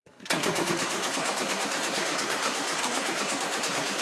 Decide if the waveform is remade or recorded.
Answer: remade